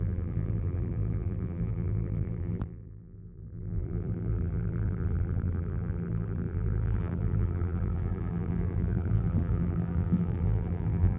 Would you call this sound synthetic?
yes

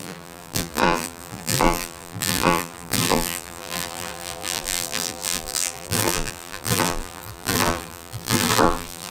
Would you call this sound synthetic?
yes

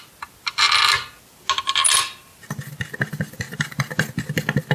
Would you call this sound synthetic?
no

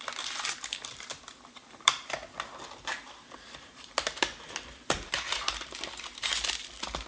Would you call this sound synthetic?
yes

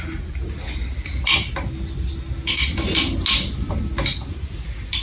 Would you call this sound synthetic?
no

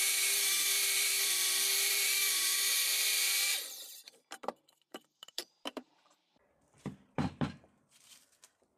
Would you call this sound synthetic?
yes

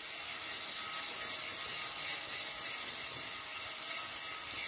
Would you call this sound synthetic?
no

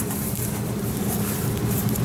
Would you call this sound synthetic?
yes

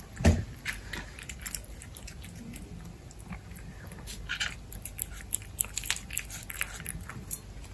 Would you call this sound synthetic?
no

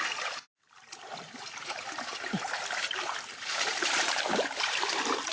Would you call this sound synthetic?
yes